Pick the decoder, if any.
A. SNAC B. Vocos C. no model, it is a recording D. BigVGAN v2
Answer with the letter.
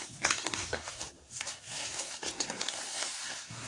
A